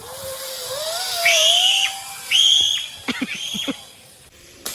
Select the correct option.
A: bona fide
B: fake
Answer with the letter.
B